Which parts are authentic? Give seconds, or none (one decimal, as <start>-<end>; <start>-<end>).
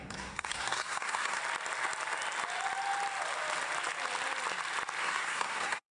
1.4-5.0